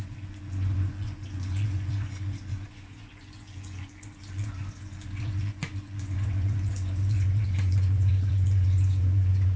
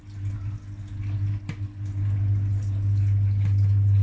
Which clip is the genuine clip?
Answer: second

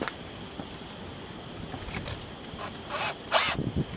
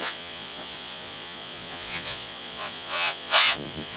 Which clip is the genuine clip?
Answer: first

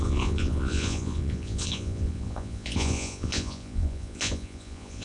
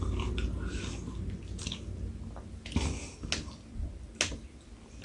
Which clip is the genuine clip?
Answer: second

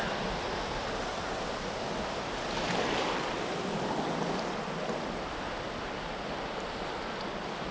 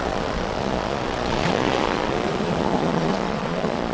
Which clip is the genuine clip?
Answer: first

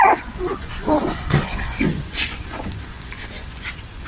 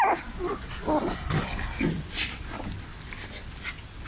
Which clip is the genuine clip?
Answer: second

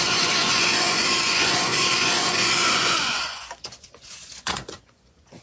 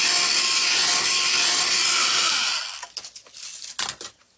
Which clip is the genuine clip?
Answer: second